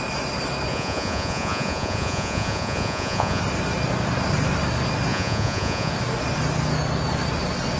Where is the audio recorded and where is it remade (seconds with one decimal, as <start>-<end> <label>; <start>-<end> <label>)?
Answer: 0.0-0.7 recorded; 0.7-3.4 remade; 3.4-5.1 recorded; 5.1-5.9 remade; 5.9-7.8 recorded